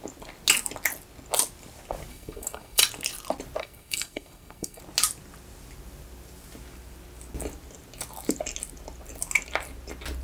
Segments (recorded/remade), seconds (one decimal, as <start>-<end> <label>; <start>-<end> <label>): 0.0-2.1 recorded; 2.1-2.8 remade; 2.8-3.6 recorded; 3.6-4.8 remade; 4.8-10.2 recorded